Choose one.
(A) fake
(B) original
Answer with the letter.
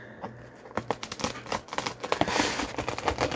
B